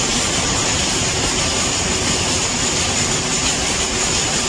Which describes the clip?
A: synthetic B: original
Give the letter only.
B